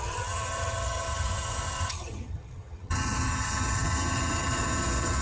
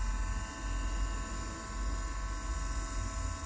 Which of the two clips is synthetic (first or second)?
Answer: first